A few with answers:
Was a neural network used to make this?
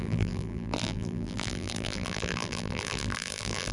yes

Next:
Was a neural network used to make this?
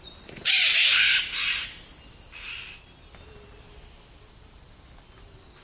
no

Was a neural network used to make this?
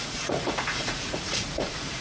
yes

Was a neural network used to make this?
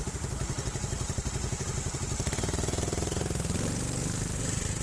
no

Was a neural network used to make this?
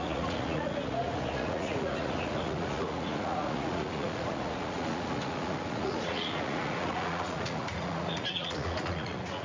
yes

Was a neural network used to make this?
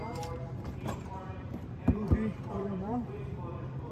yes